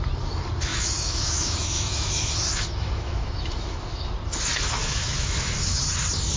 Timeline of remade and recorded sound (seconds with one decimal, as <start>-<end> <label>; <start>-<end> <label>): 0.0-0.7 recorded; 0.7-4.1 remade; 4.1-4.8 recorded; 4.8-5.8 remade; 5.8-6.4 recorded